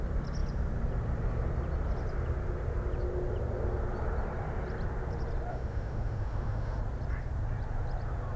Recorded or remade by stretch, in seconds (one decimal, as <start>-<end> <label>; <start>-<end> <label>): 0.0-5.5 recorded; 5.5-6.8 remade; 6.8-8.4 recorded